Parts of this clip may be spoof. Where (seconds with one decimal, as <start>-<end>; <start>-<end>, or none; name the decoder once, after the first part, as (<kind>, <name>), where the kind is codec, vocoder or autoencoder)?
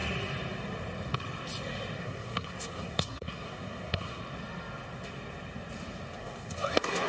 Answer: 2.0-4.2 (codec, SNAC); 6.2-7.1